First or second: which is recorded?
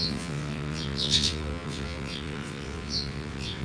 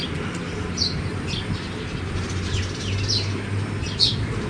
second